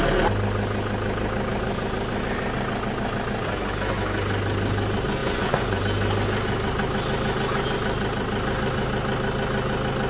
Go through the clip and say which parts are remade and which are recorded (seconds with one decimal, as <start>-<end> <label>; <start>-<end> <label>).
0.0-5.2 recorded; 5.2-5.8 remade; 5.8-10.1 recorded